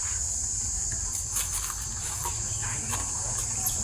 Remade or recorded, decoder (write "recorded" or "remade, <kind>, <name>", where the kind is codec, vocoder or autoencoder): recorded